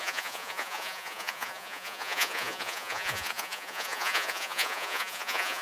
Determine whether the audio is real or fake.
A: fake